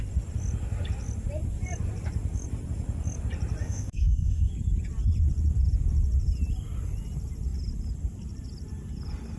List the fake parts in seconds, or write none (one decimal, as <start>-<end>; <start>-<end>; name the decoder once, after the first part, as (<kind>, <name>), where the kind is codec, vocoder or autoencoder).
3.6-4.5 (autoencoder, DAC-VAE)